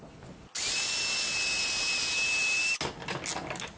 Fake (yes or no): no